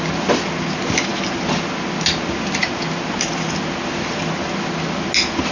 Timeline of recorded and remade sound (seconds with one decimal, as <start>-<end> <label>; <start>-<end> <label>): 0.0-5.5 recorded